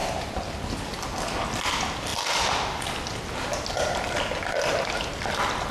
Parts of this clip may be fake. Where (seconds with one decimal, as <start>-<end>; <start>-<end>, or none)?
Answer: none